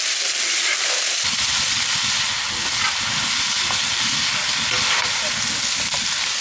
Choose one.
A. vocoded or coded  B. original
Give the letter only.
B